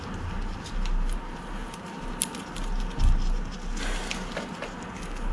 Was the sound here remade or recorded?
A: recorded